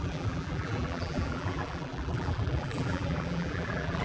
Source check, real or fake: fake